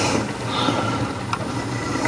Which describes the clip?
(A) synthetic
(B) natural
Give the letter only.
B